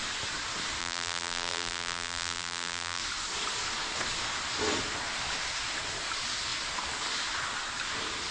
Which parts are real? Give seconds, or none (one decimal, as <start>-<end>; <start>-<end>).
0.0-0.8; 3.0-8.3